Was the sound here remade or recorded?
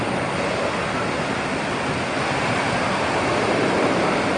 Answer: recorded